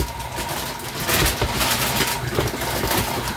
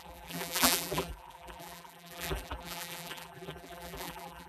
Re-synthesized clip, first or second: second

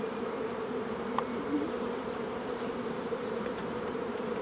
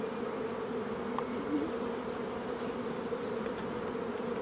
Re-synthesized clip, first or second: first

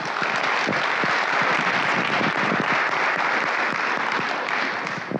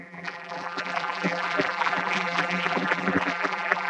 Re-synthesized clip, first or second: second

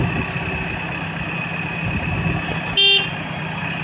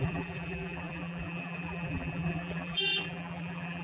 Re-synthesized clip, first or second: second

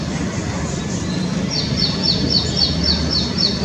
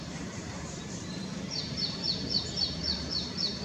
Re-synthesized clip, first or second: second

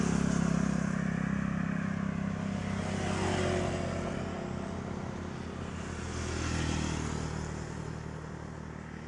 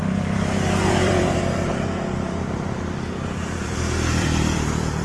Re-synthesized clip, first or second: second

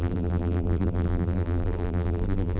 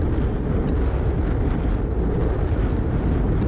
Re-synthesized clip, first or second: first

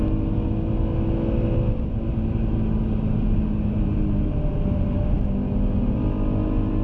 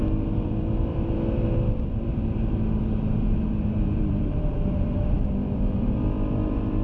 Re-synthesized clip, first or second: second